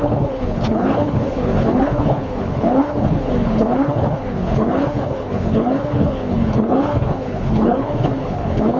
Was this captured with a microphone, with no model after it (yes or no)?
no